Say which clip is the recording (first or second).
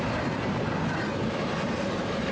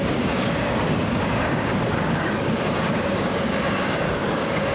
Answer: first